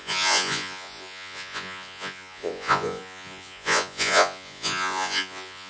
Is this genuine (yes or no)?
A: no